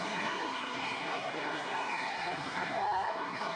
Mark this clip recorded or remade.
remade